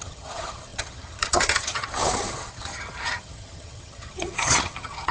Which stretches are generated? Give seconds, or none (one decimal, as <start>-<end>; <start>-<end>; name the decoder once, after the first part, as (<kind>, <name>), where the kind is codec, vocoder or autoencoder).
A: 0.0-5.1 (vocoder, HiFi-GAN)